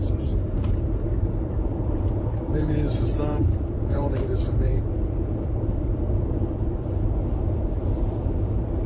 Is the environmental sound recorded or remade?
remade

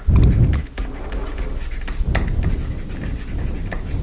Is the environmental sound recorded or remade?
recorded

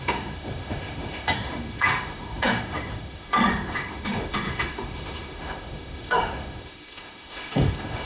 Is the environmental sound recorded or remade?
remade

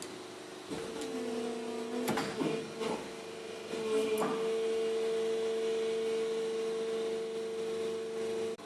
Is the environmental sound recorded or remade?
recorded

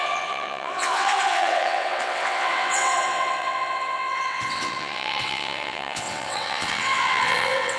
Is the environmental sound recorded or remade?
remade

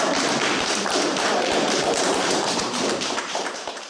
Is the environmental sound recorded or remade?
remade